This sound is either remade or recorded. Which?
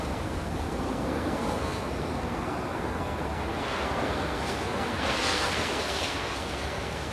remade